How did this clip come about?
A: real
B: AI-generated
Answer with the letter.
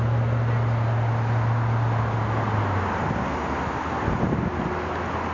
A